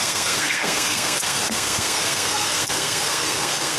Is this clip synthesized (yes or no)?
yes